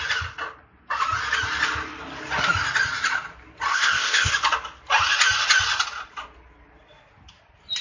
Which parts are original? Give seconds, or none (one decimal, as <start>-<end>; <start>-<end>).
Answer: 0.0-3.7; 4.3-7.8